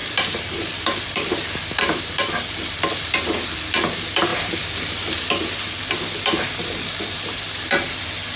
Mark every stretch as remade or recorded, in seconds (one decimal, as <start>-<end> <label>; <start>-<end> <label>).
0.0-2.8 remade; 2.8-4.3 recorded; 4.3-5.3 remade; 5.3-8.4 recorded